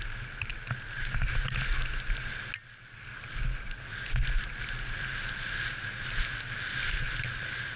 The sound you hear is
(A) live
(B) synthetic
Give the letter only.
A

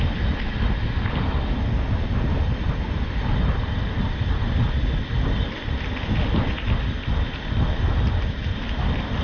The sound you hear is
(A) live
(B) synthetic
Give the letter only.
A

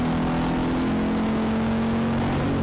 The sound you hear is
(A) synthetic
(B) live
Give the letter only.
B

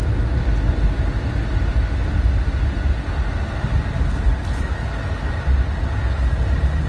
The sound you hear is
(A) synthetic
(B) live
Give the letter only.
B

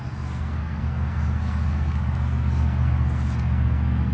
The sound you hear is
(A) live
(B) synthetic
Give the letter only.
B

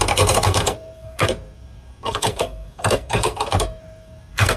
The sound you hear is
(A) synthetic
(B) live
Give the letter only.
A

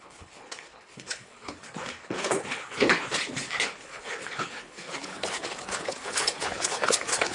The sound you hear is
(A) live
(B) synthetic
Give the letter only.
B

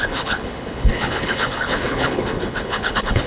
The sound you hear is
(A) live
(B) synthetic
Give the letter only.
B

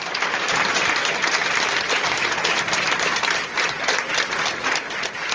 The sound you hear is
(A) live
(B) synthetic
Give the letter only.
A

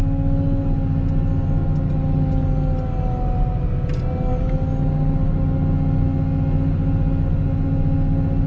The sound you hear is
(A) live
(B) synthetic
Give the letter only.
A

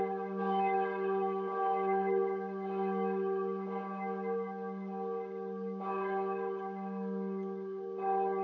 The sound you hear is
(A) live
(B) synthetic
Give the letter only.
B